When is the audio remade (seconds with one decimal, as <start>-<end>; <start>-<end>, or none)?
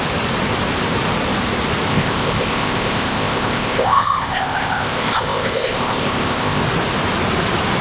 1.9-6.6